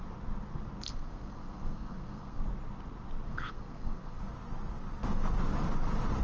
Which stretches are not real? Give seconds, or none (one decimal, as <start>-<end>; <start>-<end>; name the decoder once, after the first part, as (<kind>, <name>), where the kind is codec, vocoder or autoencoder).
0.9-2.4 (codec, SNAC); 3.3-4.2